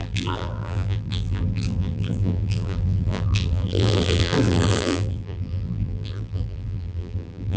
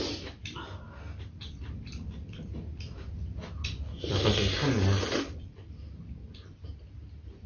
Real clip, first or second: second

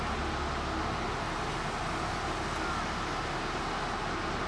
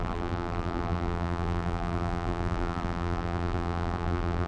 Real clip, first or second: first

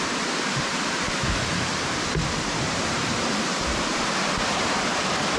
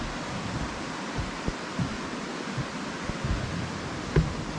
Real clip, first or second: second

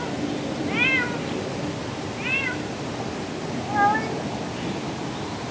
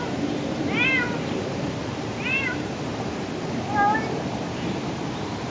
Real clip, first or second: first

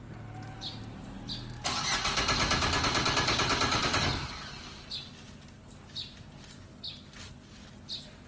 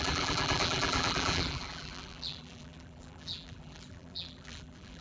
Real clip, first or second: first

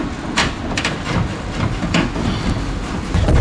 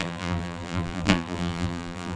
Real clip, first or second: first